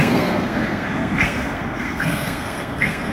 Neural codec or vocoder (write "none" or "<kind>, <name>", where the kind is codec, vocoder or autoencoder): codec, SNAC